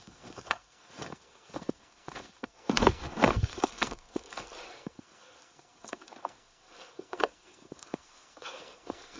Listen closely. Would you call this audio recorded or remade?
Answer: remade